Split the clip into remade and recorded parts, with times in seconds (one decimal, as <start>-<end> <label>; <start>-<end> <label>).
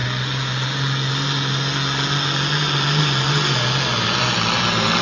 0.0-5.0 recorded